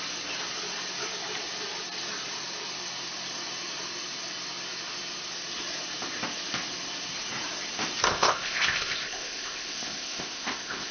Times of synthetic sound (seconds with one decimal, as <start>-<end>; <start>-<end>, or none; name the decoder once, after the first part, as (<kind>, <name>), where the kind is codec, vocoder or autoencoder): 8.1-10.9 (codec, ZipCodec)